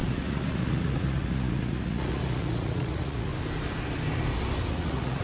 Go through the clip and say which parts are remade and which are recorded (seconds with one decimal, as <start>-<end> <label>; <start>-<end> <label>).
0.0-3.3 remade; 3.3-4.7 recorded; 4.7-5.2 remade